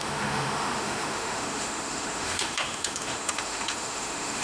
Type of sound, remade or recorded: remade